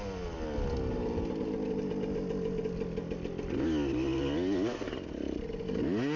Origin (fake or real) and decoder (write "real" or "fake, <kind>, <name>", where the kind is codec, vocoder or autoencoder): real